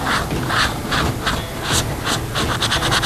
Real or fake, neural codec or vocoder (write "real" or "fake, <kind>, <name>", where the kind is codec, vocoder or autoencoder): real